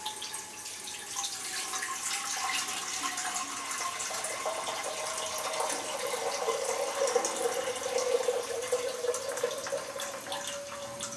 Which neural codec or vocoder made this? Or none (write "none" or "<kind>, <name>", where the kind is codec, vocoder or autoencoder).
none